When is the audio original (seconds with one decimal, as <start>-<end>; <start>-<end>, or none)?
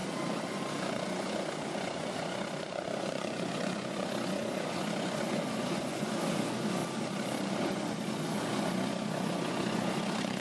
0.0-0.6; 6.8-7.6